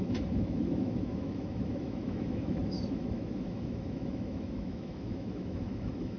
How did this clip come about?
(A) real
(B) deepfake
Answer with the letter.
B